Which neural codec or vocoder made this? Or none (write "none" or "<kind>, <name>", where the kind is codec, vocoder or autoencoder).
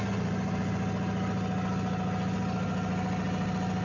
none